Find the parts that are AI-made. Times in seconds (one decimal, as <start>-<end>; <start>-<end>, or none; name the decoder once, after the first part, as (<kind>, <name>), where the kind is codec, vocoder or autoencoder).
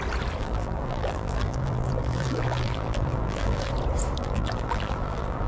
0.4-3.7 (vocoder, BigVGAN v2); 4.2-5.5